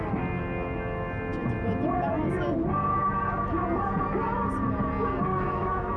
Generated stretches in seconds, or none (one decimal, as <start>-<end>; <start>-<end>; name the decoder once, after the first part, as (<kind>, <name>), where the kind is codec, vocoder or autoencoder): 5.3-6.0 (autoencoder, DAC-VAE)